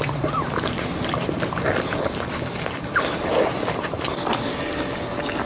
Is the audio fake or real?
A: real